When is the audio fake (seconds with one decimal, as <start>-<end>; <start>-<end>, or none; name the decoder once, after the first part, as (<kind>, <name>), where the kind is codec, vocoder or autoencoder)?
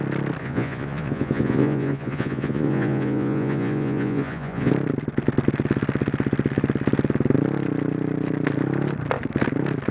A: 0.4-4.7 (vocoder, Vocos)